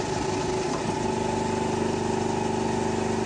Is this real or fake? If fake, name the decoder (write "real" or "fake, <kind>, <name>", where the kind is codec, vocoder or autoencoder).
real